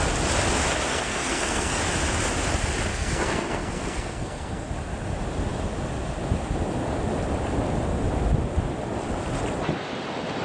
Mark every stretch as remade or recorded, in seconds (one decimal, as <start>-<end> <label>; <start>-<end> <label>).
0.0-0.9 recorded; 0.9-1.8 remade; 1.8-2.9 recorded; 2.9-4.7 remade; 4.7-10.4 recorded